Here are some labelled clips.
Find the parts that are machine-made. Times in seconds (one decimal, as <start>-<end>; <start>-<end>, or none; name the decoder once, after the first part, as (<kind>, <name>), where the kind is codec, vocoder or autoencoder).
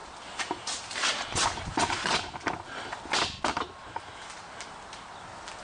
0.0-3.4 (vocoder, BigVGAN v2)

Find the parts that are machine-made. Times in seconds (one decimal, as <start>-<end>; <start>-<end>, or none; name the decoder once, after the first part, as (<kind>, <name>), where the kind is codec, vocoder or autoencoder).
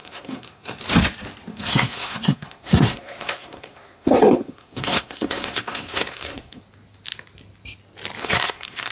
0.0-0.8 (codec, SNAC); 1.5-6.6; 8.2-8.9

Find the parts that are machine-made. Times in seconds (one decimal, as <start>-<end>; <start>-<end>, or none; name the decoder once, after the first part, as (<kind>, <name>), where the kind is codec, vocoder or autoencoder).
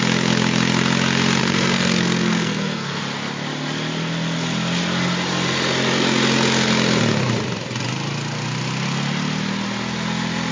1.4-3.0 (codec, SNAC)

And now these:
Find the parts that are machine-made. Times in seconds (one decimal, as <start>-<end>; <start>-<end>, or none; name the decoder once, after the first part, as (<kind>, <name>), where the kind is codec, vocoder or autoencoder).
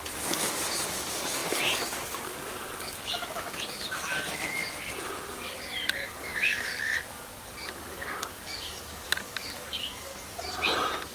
0.0-4.6 (codec, DAC); 5.3-10.1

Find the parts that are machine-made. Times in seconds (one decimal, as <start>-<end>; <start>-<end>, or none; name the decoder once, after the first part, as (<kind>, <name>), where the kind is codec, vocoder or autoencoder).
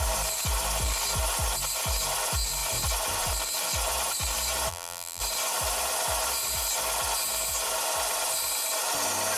4.7-5.2 (vocoder, BigVGAN v2)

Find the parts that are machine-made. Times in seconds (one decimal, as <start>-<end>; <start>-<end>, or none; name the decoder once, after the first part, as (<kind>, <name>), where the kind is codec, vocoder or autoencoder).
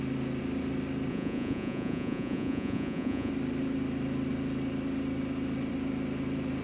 1.1-3.3 (vocoder, Vocos)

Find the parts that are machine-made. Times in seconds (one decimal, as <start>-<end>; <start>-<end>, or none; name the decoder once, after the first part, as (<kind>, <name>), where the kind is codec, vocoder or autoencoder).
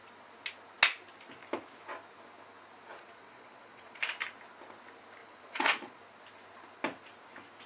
2.9-4.0 (vocoder, Vocos); 5.2-6.0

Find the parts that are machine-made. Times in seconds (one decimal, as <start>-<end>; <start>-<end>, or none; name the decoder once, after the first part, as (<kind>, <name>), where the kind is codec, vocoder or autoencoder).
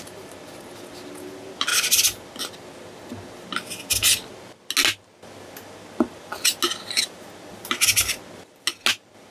none